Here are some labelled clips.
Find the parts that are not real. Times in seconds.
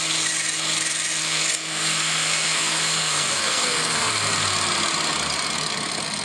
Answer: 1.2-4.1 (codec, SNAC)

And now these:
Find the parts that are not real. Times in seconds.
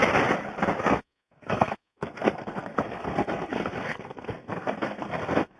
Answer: 0.8-5.6 (codec, SNAC)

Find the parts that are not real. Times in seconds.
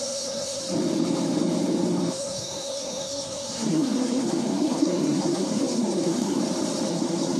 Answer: 0.0-0.6 (codec, SNAC); 2.2-6.4; 6.9-7.4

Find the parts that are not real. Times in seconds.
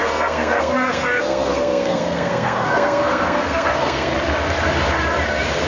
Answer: 0.0-4.1 (codec, SNAC)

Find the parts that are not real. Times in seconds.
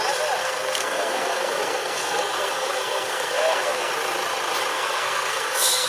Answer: 0.4-3.9 (codec, SNAC); 4.7-5.9